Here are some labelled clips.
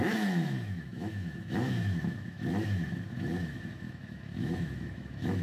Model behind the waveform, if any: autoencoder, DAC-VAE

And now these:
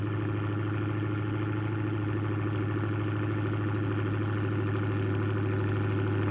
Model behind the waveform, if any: none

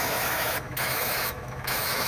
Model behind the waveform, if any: autoencoder, DAC-VAE